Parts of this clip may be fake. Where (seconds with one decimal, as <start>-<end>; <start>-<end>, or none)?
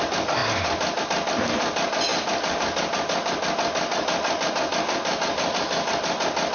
none